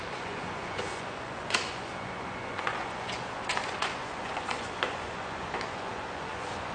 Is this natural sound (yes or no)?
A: no